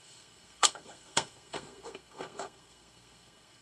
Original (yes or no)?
no